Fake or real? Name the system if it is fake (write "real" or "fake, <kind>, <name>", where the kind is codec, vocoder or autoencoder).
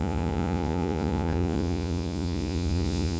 fake, vocoder, Vocos